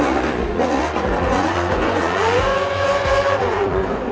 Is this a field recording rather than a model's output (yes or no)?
no